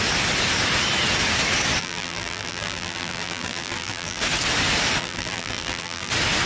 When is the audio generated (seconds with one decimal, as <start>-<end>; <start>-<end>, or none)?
1.8-4.2; 5.0-6.1